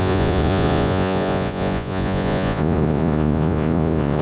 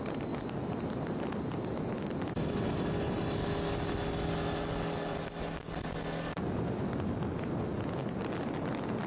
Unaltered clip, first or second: second